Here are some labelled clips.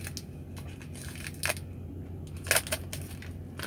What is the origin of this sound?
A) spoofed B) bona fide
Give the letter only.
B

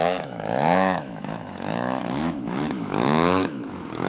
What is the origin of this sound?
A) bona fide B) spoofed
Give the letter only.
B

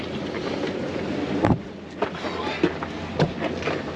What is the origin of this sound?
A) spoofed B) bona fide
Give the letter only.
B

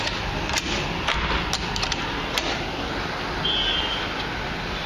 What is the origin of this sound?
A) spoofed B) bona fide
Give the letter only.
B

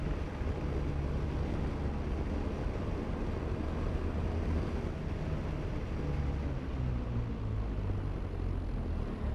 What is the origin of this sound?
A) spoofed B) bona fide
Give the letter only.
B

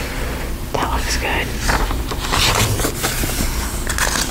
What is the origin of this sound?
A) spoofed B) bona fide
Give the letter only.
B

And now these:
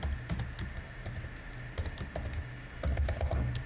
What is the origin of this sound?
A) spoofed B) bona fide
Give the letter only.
B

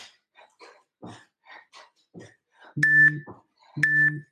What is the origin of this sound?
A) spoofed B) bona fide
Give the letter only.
B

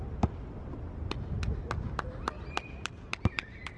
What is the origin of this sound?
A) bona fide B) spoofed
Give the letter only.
A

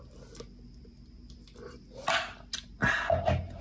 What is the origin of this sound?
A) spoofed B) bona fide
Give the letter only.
B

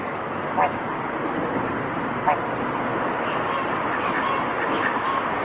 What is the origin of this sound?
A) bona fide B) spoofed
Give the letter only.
A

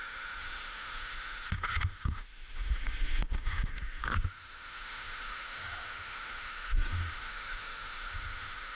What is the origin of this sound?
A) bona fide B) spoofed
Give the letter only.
B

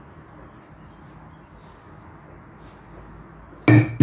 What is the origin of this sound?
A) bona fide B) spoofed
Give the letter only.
A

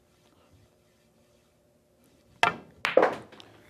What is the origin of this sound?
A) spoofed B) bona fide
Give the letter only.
B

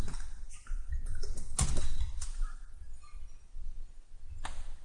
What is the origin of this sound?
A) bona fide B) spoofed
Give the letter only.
A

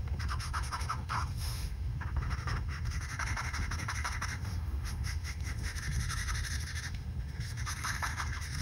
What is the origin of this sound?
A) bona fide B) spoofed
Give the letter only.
B